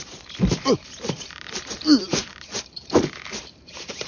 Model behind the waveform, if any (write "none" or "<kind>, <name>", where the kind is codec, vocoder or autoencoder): vocoder, BigVGAN v2